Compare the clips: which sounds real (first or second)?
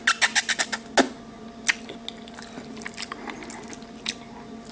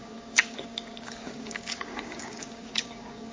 first